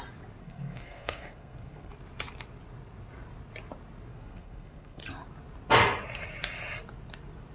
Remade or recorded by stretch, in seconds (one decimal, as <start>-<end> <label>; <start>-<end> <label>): 0.0-0.4 recorded; 0.4-1.9 remade; 1.9-4.1 recorded; 4.1-5.0 remade; 5.0-7.5 recorded